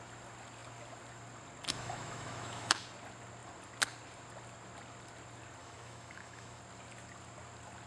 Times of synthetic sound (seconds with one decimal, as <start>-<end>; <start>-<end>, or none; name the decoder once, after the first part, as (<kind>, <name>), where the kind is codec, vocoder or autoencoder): 1.7-2.7 (autoencoder, DAC-VAE); 5.6-6.6